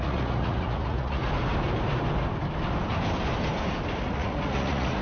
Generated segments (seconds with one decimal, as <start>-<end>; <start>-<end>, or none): 0.0-1.2; 4.0-5.0